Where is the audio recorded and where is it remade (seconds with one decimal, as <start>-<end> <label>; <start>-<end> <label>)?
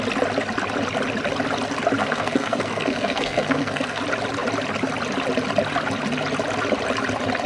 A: 0.0-2.0 recorded; 2.0-4.0 remade; 4.0-7.5 recorded